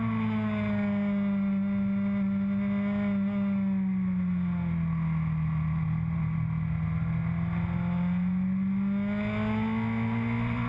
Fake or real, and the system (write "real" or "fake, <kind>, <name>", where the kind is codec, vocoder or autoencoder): real